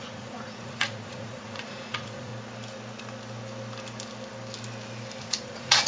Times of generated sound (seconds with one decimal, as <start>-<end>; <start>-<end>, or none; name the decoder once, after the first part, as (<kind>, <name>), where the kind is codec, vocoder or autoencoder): 0.0-2.3 (vocoder, Vocos); 5.2-5.9